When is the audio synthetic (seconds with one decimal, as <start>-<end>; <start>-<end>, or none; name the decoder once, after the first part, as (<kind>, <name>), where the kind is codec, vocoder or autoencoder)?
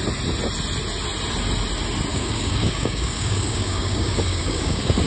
2.1-5.1 (codec, DAC)